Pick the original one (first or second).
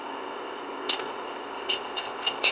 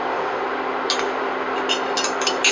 second